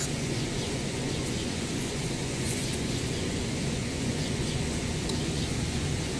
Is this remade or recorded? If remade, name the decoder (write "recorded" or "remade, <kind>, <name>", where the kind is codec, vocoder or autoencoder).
remade, vocoder, Vocos